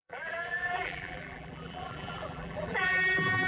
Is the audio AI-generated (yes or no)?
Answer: yes